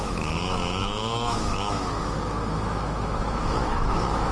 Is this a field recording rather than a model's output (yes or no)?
no